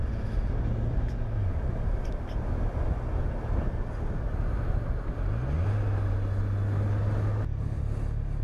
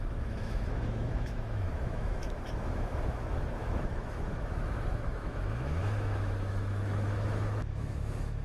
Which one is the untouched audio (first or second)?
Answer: first